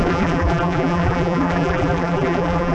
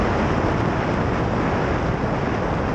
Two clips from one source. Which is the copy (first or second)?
first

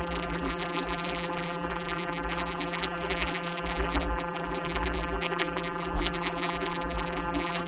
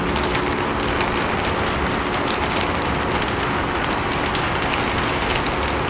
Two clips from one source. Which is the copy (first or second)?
first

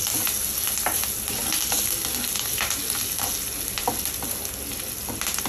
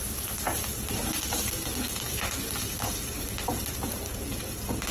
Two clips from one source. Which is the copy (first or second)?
second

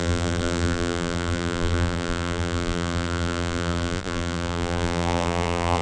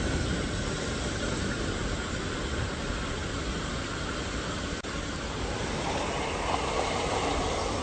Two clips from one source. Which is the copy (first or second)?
first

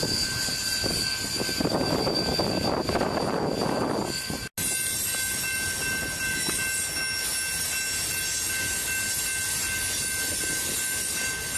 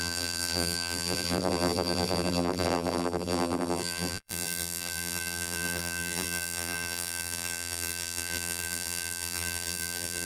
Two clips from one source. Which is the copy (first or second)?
second